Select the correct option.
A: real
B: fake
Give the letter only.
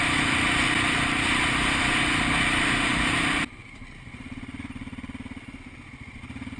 A